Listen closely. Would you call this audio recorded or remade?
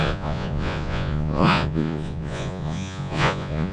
remade